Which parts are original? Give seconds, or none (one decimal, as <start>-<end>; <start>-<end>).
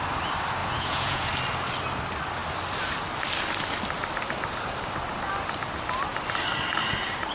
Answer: 0.0-0.6; 1.3-7.3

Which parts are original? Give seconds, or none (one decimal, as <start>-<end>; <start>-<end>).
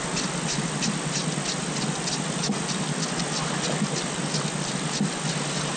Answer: 0.0-5.8